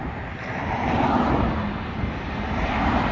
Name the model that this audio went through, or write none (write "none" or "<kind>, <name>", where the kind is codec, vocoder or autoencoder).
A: none